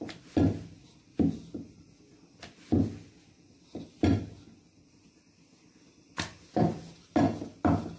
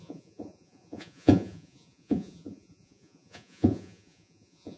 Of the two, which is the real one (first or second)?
first